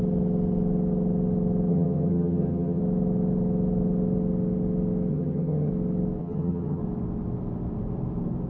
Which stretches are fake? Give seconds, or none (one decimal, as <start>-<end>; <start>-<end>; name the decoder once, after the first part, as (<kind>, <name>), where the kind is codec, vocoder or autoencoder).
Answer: 1.7-2.8 (vocoder, HiFi-GAN); 5.1-5.7; 6.2-6.8